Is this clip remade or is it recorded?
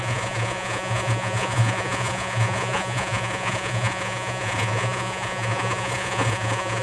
remade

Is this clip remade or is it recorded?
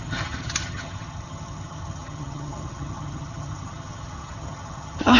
remade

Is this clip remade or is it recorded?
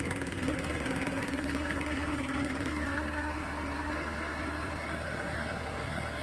remade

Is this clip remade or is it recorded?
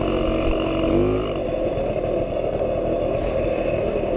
recorded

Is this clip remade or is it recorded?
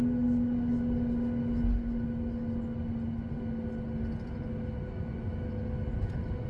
recorded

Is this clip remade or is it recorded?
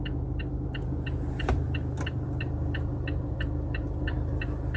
recorded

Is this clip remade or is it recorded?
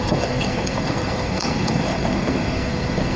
remade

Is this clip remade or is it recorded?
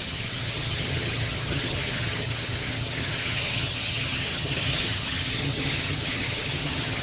remade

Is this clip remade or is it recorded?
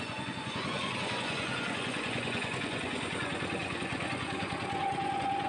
remade